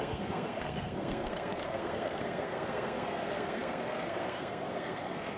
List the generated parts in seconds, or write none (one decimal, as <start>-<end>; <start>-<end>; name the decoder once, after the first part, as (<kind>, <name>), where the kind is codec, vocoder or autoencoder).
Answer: 0.0-5.4 (codec, SNAC)